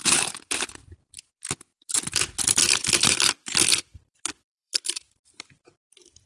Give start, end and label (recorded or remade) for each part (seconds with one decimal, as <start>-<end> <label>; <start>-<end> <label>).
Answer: 0.0-6.3 remade